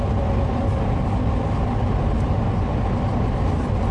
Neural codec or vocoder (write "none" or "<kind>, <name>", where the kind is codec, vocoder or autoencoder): none